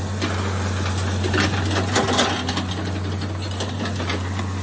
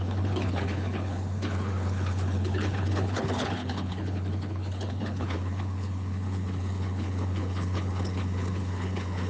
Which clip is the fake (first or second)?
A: second